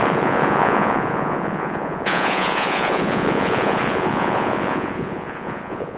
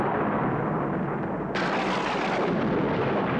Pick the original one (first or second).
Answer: second